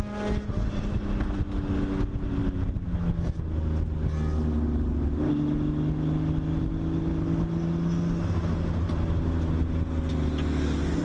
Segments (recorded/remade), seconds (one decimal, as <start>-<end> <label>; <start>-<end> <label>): 0.0-11.0 recorded